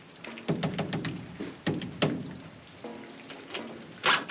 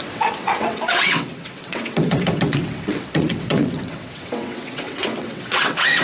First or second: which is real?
first